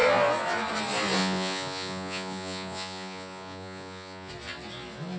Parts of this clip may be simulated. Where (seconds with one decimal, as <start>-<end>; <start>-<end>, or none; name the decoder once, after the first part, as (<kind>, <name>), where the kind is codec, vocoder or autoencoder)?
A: 1.2-4.3 (vocoder, Vocos)